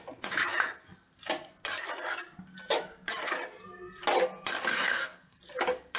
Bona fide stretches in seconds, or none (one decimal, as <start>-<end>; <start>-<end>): 0.0-4.7; 5.4-6.0